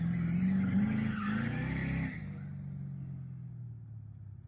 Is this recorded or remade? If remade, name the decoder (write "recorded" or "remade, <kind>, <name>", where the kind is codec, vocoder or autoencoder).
recorded